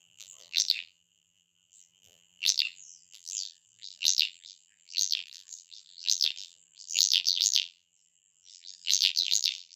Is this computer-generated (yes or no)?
yes